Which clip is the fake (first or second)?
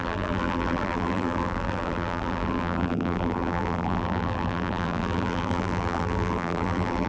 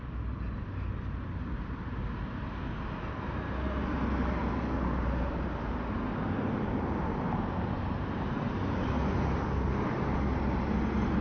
first